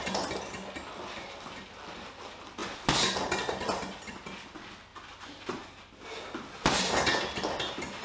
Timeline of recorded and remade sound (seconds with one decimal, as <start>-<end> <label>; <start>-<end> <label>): 0.0-8.0 recorded